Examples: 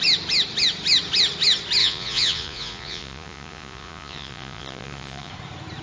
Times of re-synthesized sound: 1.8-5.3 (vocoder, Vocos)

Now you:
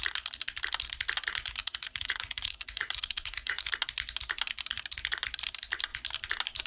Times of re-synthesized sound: 1.6-3.7 (vocoder, Vocos)